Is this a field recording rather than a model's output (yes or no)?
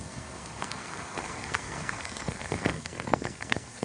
no